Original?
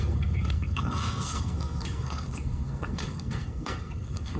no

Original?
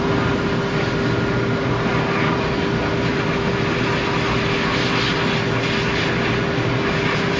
yes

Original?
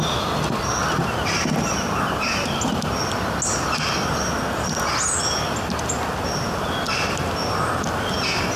yes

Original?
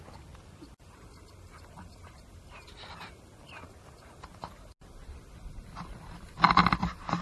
yes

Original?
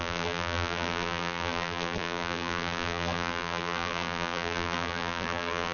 no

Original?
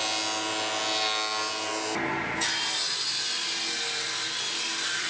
yes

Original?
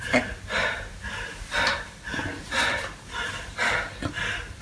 yes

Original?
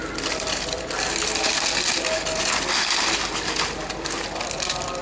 yes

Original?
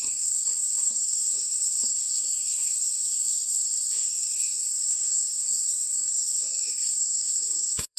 no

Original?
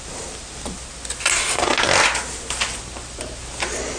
yes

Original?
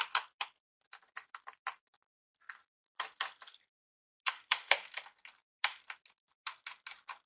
yes